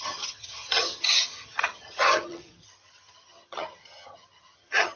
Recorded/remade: remade